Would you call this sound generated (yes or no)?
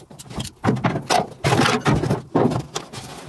no